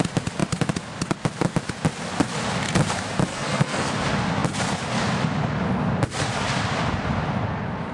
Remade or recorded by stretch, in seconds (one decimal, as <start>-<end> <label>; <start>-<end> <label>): 0.0-3.3 recorded; 3.3-3.9 remade; 3.9-7.9 recorded